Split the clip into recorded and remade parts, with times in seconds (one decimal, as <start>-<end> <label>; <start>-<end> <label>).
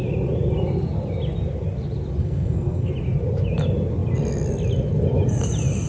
0.0-2.2 recorded; 2.2-2.9 remade; 2.9-5.9 recorded